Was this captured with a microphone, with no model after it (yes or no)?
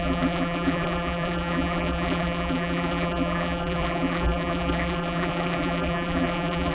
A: no